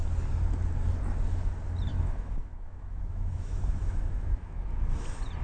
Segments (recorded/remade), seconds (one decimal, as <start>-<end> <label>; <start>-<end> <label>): 0.0-1.9 recorded; 1.9-4.7 remade; 4.7-5.4 recorded